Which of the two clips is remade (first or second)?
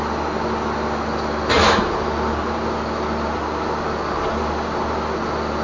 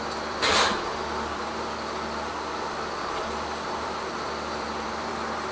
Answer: second